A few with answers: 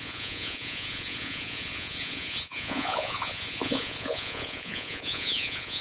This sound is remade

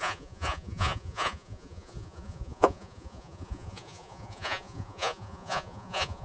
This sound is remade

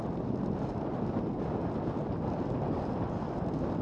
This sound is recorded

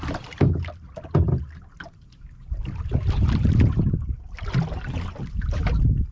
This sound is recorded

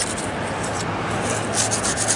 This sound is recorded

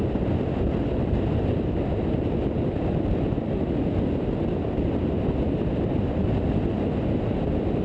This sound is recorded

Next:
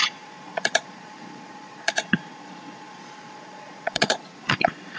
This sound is remade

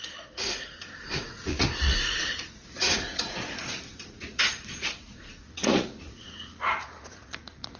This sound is remade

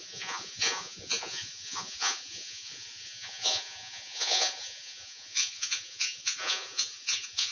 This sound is remade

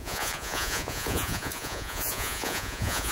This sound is remade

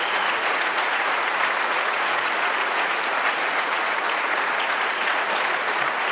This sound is remade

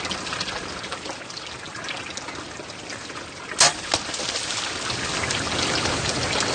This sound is recorded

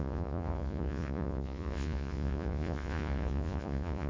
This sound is remade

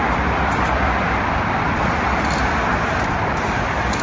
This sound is recorded